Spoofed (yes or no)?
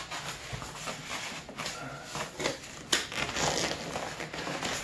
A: no